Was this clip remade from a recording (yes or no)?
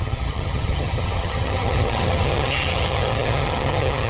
yes